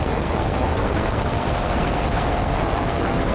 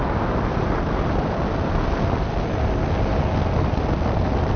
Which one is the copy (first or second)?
first